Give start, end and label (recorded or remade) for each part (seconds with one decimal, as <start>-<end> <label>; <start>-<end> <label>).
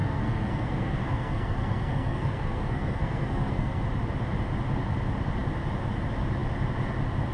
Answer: 0.0-3.8 remade; 3.8-7.3 recorded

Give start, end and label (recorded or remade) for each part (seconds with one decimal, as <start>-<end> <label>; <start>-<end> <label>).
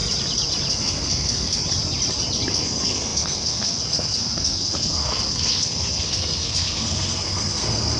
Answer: 0.0-0.7 recorded; 0.7-1.6 remade; 1.6-2.5 recorded; 2.5-8.0 remade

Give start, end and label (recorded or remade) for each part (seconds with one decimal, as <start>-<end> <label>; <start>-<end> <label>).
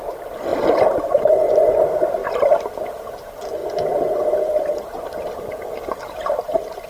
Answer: 0.0-6.9 recorded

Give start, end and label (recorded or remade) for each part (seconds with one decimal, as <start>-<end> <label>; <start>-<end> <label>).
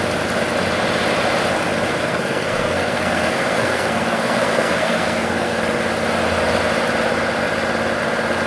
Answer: 0.0-1.9 recorded; 1.9-5.6 remade; 5.6-8.5 recorded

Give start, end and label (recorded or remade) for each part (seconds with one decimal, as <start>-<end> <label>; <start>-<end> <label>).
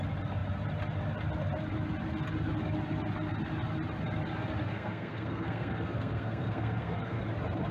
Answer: 0.0-4.6 recorded; 4.6-7.2 remade; 7.2-7.7 recorded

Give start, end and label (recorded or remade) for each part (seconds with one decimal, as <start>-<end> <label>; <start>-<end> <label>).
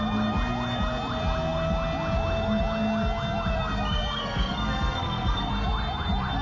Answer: 0.0-4.2 recorded; 4.2-5.5 remade; 5.5-6.4 recorded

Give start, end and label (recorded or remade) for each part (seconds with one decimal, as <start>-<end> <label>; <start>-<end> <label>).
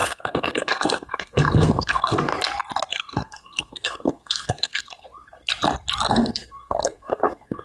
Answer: 0.0-2.3 remade; 2.3-2.9 recorded; 2.9-5.1 remade; 5.1-6.1 recorded; 6.1-7.6 remade